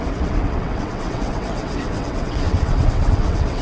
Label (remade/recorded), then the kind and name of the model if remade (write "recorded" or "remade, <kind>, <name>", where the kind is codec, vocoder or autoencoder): remade, vocoder, WaveNeXt